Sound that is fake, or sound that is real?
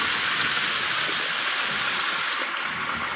real